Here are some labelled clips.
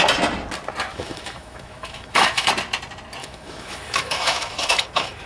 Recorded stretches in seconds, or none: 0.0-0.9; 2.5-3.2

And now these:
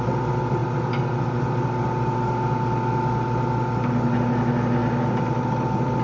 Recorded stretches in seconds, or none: 0.0-6.0

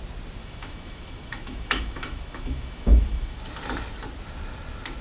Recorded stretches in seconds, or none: 0.0-0.4; 3.4-5.0

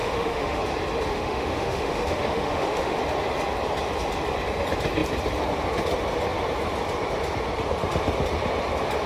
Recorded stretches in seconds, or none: 0.6-1.1; 3.0-9.1

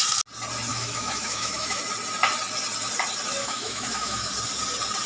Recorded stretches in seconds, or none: 0.0-0.7; 1.8-3.4; 4.3-5.1

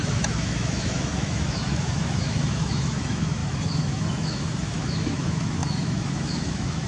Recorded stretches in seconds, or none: none